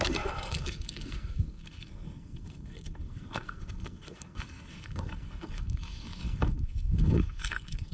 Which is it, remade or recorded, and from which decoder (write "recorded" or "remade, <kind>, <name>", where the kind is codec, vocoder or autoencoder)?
remade, codec, SNAC